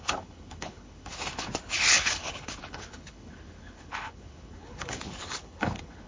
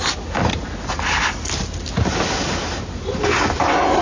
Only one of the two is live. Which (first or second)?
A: second